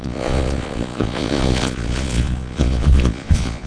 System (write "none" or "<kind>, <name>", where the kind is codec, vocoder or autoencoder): vocoder, Vocos